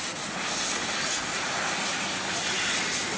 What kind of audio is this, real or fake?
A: real